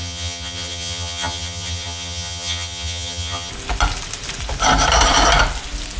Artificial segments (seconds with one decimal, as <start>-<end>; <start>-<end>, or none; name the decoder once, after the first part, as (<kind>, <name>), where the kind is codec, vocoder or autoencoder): 0.0-3.5 (vocoder, HiFi-GAN)